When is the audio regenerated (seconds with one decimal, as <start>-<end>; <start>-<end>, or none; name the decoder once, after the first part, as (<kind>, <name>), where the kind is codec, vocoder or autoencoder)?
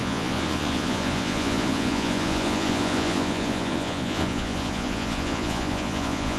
0.0-6.4 (vocoder, Vocos)